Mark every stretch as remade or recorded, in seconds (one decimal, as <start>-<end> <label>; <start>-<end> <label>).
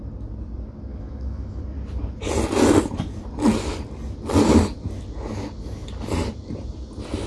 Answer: 0.0-0.9 recorded; 0.9-1.6 remade; 1.6-7.3 recorded